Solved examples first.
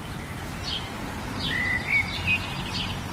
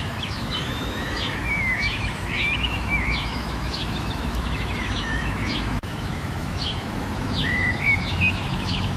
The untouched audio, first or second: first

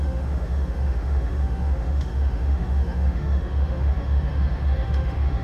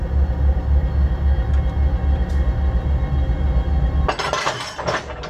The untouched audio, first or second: second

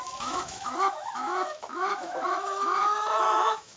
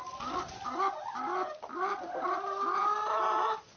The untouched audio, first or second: second